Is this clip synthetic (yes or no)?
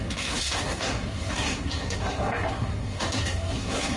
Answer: yes